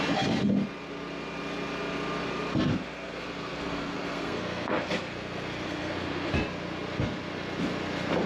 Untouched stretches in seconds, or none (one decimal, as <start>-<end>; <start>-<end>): 0.0-2.7; 6.3-8.3